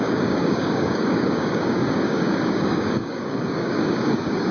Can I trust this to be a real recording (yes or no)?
no